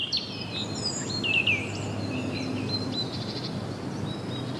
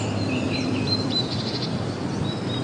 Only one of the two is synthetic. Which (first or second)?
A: second